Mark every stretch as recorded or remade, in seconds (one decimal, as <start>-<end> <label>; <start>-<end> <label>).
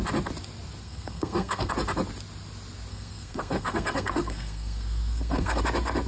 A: 0.0-0.8 recorded; 0.8-1.7 remade; 1.7-2.9 recorded; 2.9-5.6 remade; 5.6-6.1 recorded